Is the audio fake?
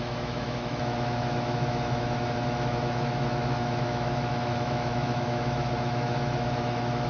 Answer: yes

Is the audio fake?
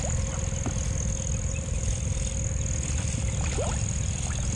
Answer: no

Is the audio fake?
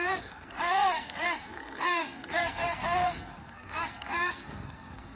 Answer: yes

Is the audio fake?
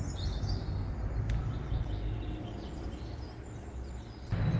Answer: no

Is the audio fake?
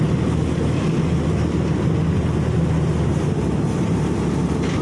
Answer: no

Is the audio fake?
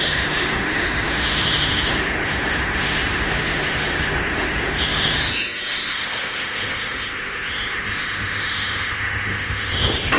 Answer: yes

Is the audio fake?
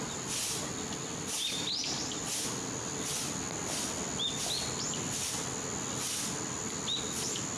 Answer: no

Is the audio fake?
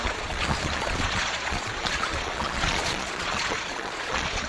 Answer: yes